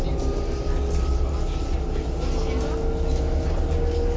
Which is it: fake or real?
real